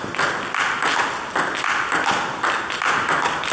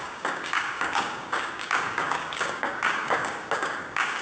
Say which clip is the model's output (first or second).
second